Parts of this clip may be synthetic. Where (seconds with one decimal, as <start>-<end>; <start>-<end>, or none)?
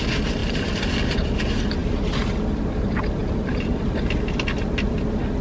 0.4-1.4; 1.8-2.6